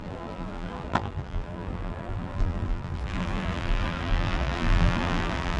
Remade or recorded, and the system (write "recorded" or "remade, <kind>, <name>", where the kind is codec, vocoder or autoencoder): remade, vocoder, BigVGAN v2